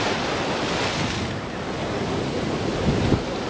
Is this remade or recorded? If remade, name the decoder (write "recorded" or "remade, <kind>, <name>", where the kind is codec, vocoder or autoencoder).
recorded